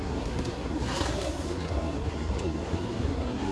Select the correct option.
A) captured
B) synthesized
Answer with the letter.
B